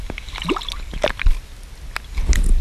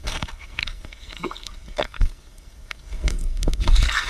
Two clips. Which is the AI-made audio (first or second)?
second